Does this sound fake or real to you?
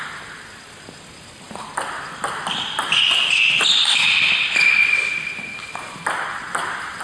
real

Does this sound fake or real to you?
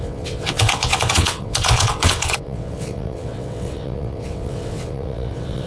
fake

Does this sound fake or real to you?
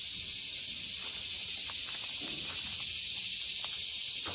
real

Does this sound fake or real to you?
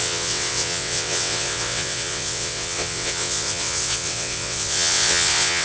fake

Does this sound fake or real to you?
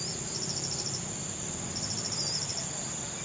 real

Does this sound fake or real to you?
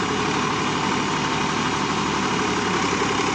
real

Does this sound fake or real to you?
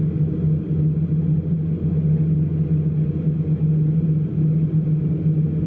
real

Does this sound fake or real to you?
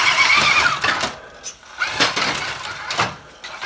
real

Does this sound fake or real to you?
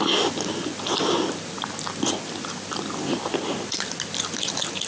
real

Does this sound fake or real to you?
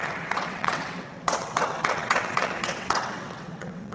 fake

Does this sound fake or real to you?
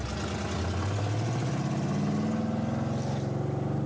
real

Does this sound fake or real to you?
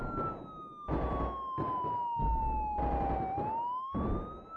real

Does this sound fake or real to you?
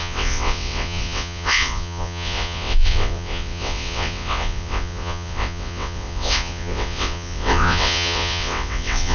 fake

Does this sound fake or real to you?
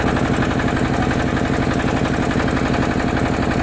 real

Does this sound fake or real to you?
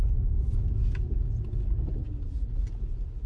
real